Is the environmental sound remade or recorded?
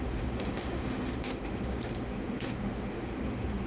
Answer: remade